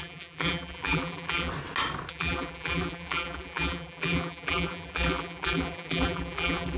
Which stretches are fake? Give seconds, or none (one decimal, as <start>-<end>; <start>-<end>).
0.0-1.5; 2.1-6.8